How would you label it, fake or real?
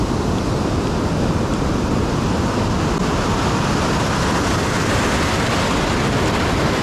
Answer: real